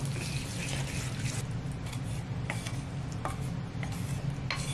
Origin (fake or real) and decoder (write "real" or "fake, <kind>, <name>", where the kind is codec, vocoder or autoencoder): real